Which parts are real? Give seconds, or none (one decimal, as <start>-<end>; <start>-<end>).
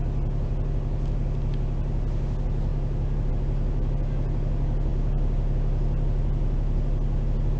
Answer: 0.0-7.6